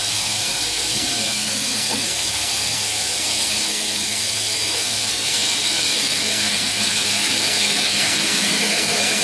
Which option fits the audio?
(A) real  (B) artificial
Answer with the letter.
B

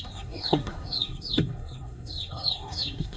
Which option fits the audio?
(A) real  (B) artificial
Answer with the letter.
B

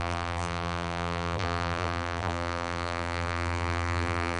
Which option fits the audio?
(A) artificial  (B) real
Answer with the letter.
A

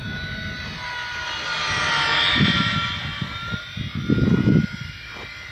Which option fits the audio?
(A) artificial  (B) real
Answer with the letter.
B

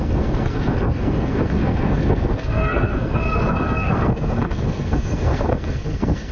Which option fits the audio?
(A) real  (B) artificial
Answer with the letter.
B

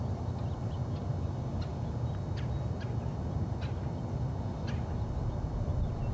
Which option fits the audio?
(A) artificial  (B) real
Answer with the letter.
B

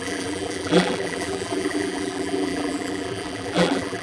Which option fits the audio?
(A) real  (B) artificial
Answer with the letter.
B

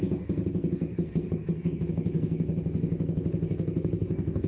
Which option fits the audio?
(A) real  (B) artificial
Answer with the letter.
B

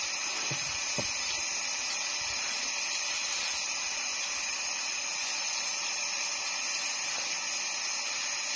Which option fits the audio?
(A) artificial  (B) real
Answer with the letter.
B